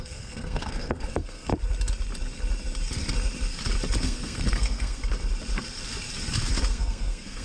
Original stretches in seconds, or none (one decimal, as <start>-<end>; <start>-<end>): 1.5-4.0; 5.0-6.7

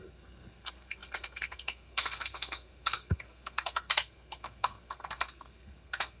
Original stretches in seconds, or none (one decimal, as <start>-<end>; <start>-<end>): none